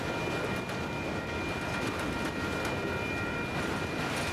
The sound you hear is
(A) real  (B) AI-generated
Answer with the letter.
A